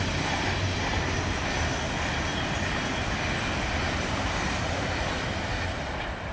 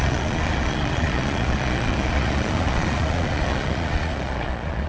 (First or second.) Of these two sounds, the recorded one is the first